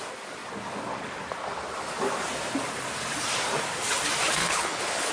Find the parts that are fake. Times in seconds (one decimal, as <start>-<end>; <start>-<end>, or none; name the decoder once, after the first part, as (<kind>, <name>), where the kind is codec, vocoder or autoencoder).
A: 4.4-5.1 (codec, HILCodec)